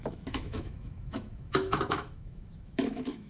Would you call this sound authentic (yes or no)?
no